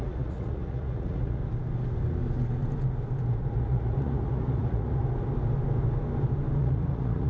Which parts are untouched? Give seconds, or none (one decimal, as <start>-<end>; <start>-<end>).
1.4-3.6; 5.0-6.6